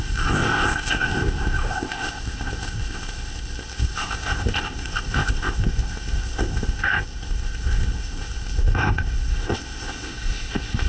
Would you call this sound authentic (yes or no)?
no